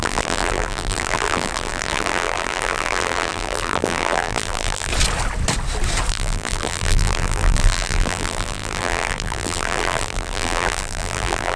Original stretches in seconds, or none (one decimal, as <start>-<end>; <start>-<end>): 4.9-6.1

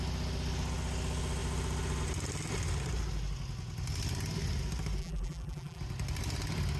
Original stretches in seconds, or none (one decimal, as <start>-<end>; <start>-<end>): 0.0-5.0; 5.8-6.8

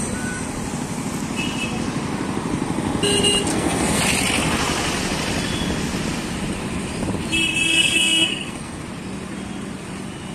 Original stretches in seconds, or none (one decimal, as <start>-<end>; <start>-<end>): 0.0-3.5; 4.0-7.7; 8.8-10.3

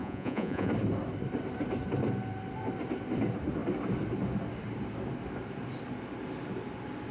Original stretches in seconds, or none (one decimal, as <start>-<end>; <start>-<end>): 0.7-7.1

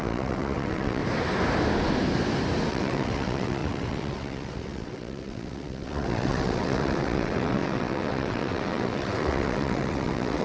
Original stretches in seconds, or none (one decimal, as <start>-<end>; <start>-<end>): 1.0-2.7

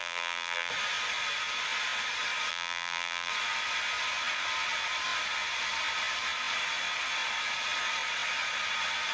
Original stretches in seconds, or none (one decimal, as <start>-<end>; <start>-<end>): 0.7-2.5; 3.3-9.1